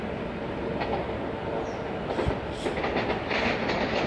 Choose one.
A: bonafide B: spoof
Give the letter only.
A